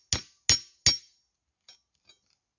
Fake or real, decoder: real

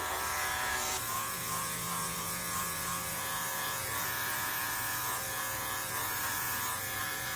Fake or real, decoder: fake, vocoder, Vocos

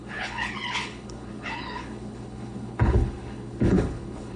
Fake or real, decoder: fake, codec, HILCodec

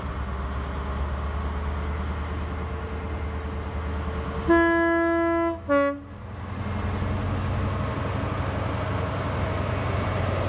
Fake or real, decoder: real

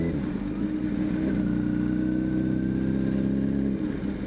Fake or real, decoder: real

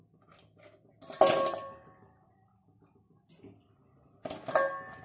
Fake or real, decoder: real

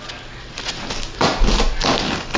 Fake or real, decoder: real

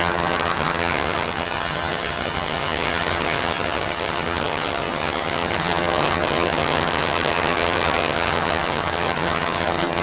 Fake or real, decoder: fake, vocoder, HiFi-GAN